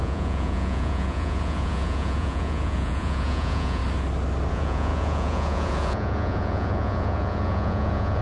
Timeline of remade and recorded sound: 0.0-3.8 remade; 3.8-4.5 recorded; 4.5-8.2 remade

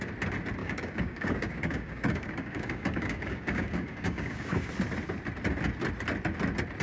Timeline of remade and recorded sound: 0.0-0.6 recorded; 0.6-4.7 remade; 4.7-6.8 recorded

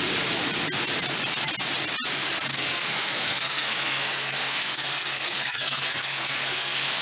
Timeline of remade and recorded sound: 0.0-2.5 recorded; 2.5-7.0 remade

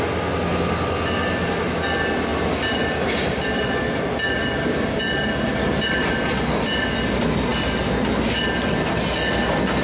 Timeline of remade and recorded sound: 0.0-2.3 recorded; 2.3-5.0 remade; 5.0-9.8 recorded

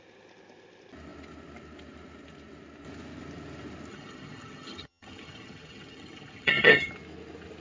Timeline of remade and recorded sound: 0.0-3.9 recorded; 3.9-6.9 remade; 6.9-7.6 recorded

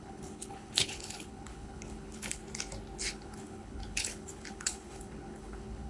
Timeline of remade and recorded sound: 0.0-2.4 remade; 2.4-3.0 recorded; 3.0-5.9 remade